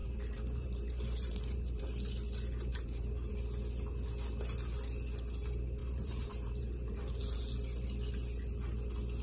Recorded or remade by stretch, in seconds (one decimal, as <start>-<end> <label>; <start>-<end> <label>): 0.0-1.8 remade; 1.8-2.7 recorded; 2.7-3.3 remade; 3.3-5.8 recorded; 5.8-7.4 remade; 7.4-9.2 recorded